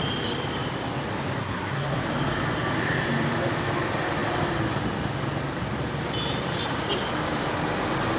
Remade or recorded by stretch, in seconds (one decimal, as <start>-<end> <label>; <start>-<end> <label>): 0.0-1.4 recorded; 1.4-2.0 remade; 2.0-8.2 recorded